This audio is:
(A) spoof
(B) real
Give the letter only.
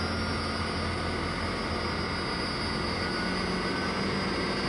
B